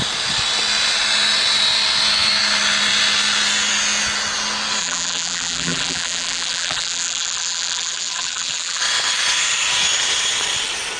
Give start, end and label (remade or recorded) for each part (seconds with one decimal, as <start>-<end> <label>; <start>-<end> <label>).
0.0-4.8 recorded; 4.8-8.8 remade; 8.8-11.0 recorded